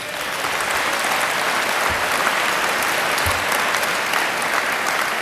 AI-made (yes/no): no